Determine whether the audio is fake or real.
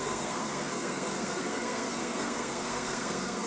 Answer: fake